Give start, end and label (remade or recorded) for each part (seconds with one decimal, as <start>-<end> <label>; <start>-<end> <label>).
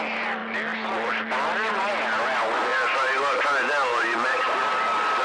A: 0.0-3.9 recorded; 3.9-4.7 remade; 4.7-5.2 recorded